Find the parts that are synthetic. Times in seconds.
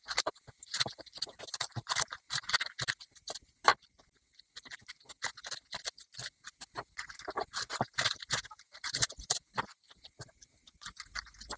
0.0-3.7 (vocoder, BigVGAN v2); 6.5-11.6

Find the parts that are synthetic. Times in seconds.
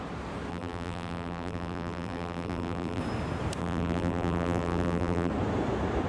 0.5-3.0 (vocoder, BigVGAN v2); 3.6-5.3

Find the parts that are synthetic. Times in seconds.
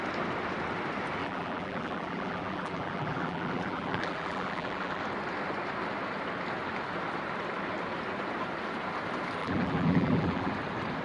1.2-5.0 (vocoder, BigVGAN v2); 9.4-10.5